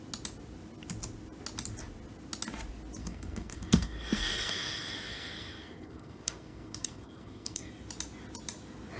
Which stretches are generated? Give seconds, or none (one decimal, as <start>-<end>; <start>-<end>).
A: 3.0-7.7